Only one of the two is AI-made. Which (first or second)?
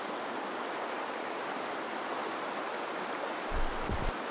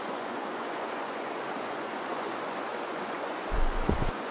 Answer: second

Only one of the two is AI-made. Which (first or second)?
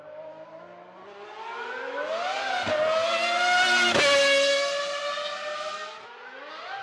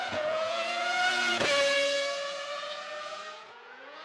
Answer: second